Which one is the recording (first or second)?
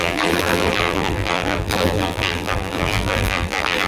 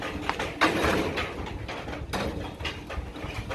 second